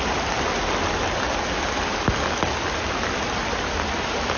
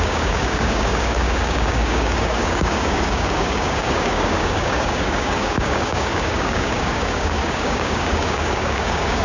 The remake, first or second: second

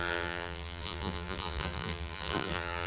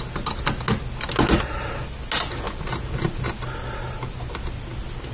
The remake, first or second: first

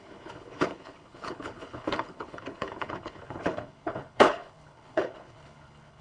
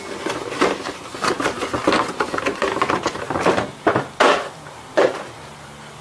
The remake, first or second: first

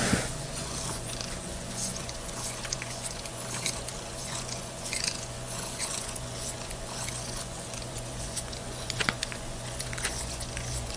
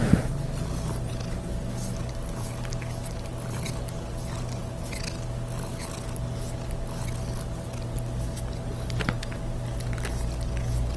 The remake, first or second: first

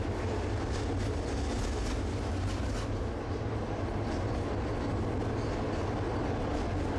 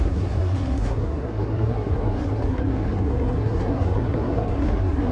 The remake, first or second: second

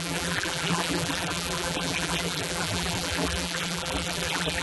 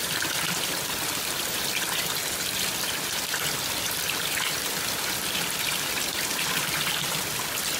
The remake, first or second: first